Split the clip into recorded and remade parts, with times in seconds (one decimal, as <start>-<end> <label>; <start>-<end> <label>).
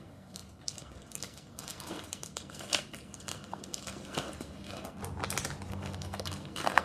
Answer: 0.0-5.0 remade; 5.0-5.7 recorded; 5.7-6.8 remade